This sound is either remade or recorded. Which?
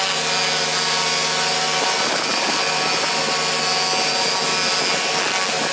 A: recorded